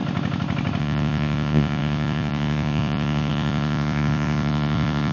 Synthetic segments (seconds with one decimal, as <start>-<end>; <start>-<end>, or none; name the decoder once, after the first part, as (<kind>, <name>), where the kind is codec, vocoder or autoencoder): 0.8-5.1 (vocoder, Vocos)